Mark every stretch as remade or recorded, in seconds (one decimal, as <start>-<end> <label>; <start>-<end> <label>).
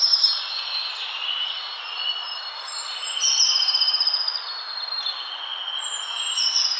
0.0-6.8 recorded